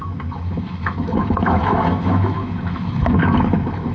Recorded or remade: remade